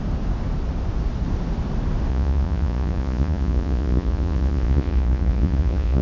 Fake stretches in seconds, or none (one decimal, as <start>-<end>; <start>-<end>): 2.1-6.0